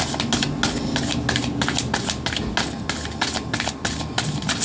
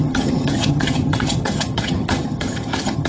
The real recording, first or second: first